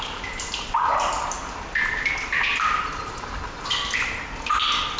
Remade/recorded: recorded